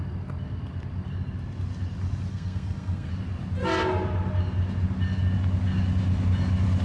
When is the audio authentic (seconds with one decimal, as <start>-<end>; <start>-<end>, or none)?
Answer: 0.0-2.3; 3.1-6.8